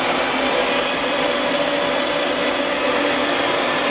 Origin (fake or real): real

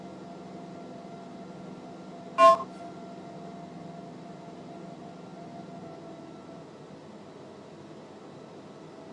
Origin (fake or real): real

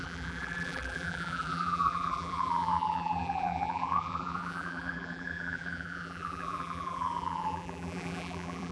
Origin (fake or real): fake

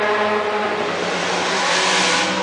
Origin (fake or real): real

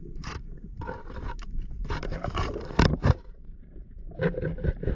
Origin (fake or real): fake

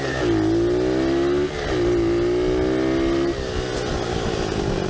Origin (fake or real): real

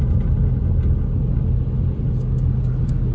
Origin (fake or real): real